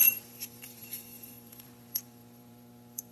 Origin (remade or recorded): remade